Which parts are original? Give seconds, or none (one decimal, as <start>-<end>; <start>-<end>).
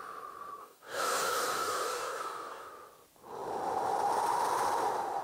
0.0-0.6; 2.7-5.2